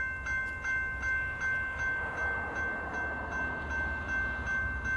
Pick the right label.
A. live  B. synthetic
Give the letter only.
A